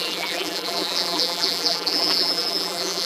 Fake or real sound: fake